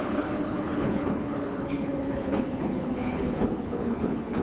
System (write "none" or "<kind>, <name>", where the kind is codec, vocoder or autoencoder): codec, HILCodec